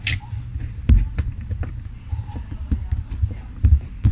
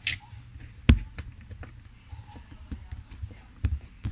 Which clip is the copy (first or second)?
first